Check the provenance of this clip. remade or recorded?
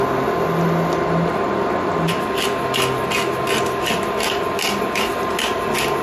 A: recorded